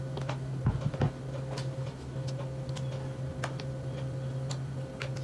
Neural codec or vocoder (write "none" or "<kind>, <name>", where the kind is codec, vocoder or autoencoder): none